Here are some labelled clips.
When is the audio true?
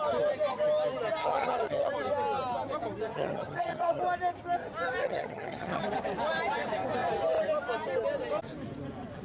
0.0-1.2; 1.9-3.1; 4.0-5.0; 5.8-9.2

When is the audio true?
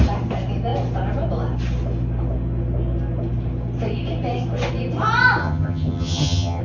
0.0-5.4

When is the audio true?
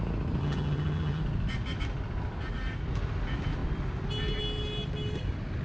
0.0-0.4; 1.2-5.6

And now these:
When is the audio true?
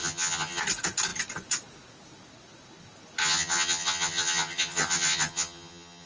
0.6-3.2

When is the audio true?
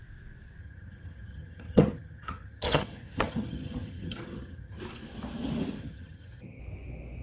0.0-0.6; 4.8-5.8; 6.6-7.2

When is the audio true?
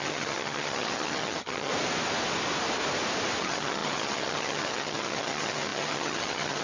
1.7-3.4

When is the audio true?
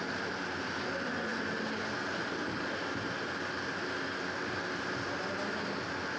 0.0-6.2